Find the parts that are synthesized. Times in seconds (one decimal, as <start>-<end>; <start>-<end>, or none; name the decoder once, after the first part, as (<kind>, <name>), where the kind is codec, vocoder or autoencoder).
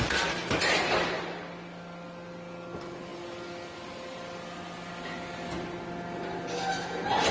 none